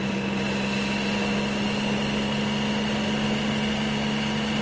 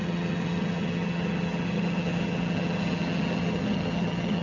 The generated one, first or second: second